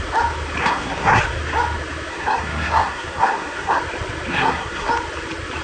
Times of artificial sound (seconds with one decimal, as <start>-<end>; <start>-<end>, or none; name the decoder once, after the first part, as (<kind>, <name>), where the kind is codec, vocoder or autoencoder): 0.6-1.2 (codec, SNAC); 2.1-3.8; 4.3-4.9